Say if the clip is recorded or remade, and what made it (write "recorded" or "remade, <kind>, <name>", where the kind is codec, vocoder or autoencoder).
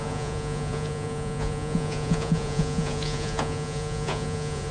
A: remade, vocoder, Vocos